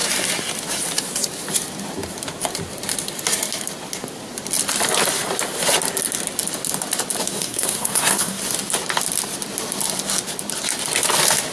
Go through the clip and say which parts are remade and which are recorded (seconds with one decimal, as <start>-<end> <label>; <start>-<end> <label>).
0.0-7.3 recorded; 7.3-8.4 remade; 8.4-11.5 recorded